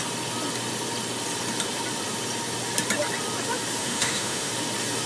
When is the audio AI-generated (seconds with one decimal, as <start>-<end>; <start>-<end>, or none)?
3.8-4.5